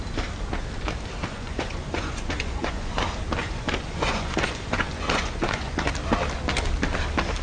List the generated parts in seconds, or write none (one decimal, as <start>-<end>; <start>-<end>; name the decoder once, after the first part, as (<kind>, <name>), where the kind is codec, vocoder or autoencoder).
1.3-2.9 (vocoder, Vocos); 3.4-5.9